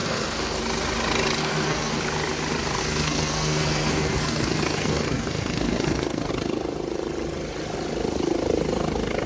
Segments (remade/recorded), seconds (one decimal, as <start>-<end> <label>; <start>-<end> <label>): 0.0-0.6 remade; 0.6-1.4 recorded; 1.4-2.0 remade; 2.0-2.8 recorded; 2.8-6.3 remade; 6.3-9.3 recorded